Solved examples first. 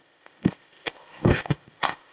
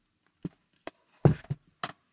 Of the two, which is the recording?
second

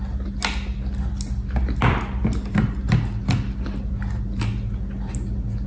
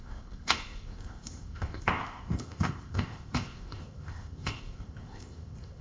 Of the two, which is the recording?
first